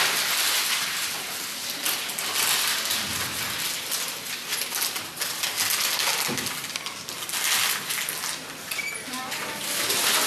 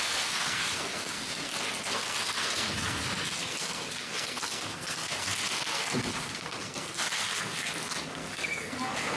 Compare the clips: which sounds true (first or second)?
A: first